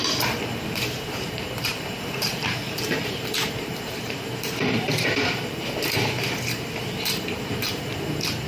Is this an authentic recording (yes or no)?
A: no